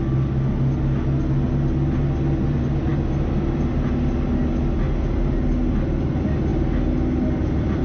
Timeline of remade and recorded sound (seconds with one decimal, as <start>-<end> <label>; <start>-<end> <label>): 0.0-7.8 recorded